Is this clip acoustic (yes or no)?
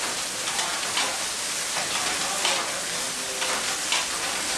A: yes